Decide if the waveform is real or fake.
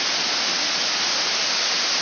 real